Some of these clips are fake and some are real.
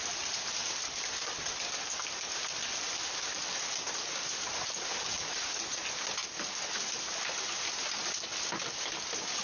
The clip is real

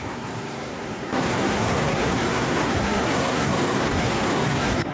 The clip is fake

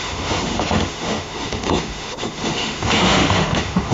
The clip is fake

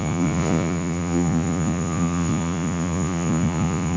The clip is fake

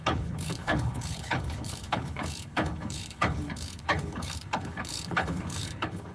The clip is fake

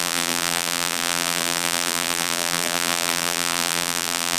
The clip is fake